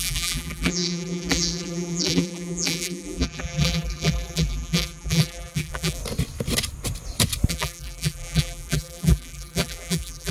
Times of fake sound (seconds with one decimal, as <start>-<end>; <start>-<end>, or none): 0.0-6.0; 7.5-10.3